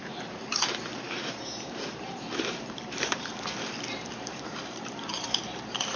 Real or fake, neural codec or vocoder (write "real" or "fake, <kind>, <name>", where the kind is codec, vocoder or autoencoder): fake, vocoder, BigVGAN v2